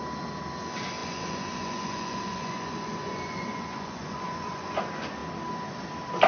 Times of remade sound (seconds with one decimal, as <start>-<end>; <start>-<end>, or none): 1.0-4.8